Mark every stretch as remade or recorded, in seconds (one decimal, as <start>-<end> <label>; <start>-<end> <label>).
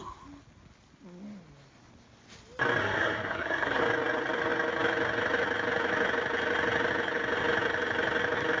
0.0-2.8 recorded; 2.8-3.8 remade; 3.8-8.6 recorded